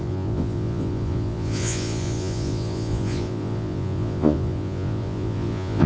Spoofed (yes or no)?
yes